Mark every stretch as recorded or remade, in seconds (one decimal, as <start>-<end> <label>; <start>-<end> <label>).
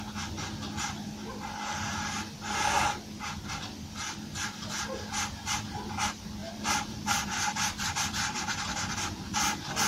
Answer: 0.0-6.4 recorded; 6.4-9.9 remade